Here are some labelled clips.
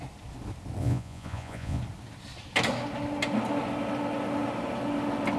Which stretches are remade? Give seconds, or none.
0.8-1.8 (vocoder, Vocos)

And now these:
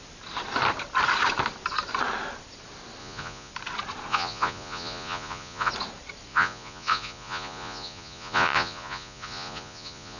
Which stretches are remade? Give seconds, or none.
3.0-3.5 (vocoder, Vocos); 4.1-5.7; 6.3-10.2

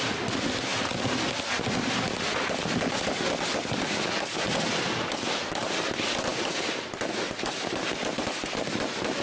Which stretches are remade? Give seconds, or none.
none

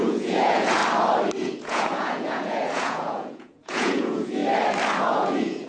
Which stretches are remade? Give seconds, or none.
0.0-0.8 (vocoder, Vocos); 1.6-4.4; 5.0-5.7

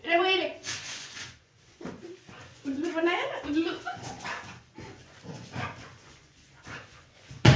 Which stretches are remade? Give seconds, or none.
0.0-7.6 (vocoder, Vocos)

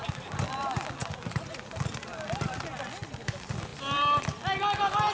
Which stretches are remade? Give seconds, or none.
none